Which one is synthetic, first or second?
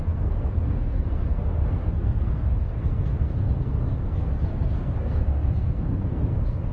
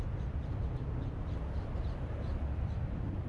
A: first